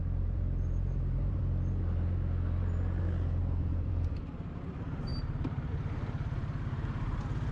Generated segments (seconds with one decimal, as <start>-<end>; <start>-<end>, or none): 0.0-1.4; 3.4-7.5